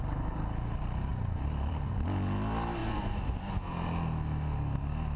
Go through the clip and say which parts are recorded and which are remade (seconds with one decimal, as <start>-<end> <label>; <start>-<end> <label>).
0.0-1.1 recorded; 1.1-1.9 remade; 1.9-2.8 recorded; 2.8-3.5 remade; 3.5-5.2 recorded

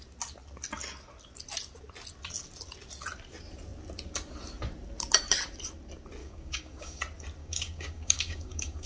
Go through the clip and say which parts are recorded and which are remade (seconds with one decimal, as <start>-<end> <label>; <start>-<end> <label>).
0.0-6.2 recorded; 6.2-7.0 remade; 7.0-7.4 recorded; 7.4-8.9 remade

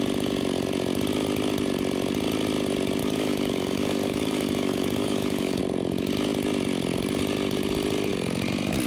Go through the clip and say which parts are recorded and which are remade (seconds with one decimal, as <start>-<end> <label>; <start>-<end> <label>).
0.0-3.0 recorded; 3.0-5.6 remade; 5.6-8.9 recorded

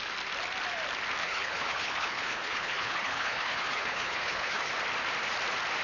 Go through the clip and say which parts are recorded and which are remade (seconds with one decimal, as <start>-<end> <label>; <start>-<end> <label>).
0.0-1.2 recorded; 1.2-4.7 remade; 4.7-5.8 recorded